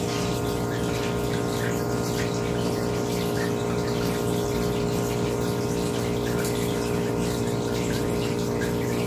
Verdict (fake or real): real